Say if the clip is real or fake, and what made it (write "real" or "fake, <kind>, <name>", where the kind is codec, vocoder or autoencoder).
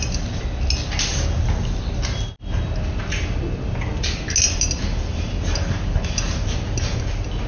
real